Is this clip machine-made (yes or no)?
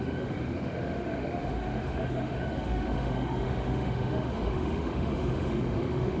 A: yes